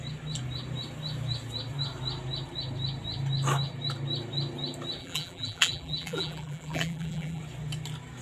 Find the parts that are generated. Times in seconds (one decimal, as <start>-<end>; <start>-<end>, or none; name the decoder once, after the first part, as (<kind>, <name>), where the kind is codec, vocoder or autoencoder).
5.0-7.4 (vocoder, BigVGAN v2)